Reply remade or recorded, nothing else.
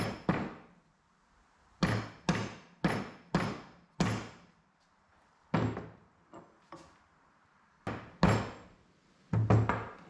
recorded